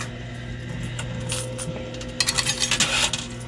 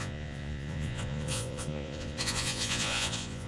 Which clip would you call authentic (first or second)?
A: first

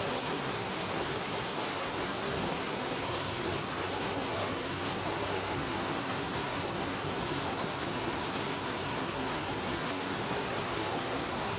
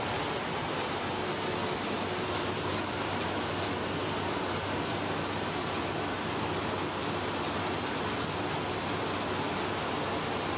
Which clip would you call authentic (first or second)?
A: second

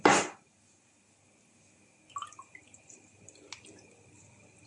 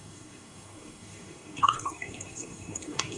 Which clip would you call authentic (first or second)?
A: first